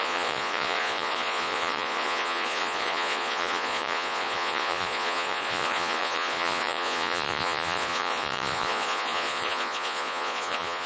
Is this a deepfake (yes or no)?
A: yes